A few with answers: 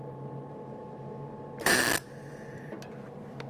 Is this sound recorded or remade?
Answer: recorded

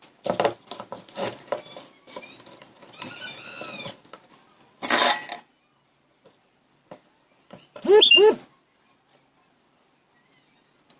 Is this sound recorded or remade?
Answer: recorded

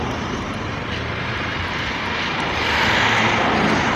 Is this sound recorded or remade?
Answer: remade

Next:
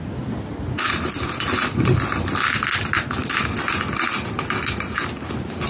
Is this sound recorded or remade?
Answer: recorded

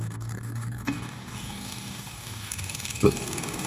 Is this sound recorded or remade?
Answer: remade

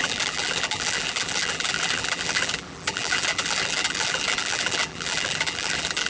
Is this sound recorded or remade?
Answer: remade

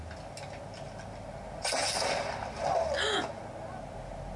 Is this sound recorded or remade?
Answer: recorded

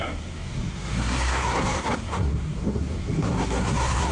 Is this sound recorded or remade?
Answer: remade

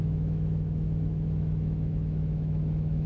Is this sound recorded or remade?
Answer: remade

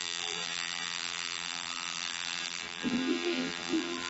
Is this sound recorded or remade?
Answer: remade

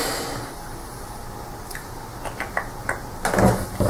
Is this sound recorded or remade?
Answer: recorded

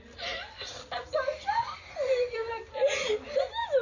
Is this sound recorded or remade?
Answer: recorded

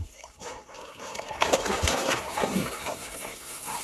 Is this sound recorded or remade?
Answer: remade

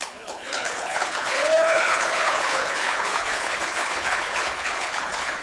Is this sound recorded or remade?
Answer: remade